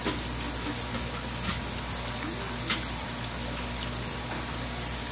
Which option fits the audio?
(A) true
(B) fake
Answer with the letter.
A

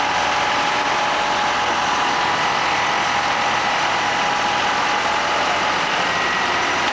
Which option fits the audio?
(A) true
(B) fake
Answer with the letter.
B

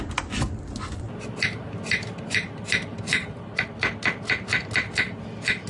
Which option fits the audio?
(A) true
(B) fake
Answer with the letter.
A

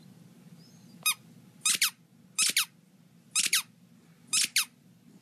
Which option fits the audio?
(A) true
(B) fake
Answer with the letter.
A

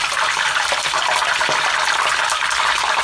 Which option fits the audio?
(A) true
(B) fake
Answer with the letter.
A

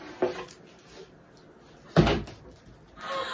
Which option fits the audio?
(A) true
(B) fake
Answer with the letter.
A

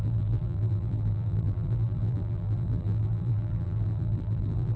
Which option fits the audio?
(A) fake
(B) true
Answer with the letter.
A